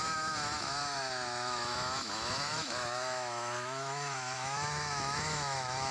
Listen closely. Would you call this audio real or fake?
fake